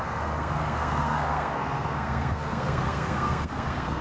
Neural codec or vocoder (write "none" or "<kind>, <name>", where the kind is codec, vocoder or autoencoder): codec, SNAC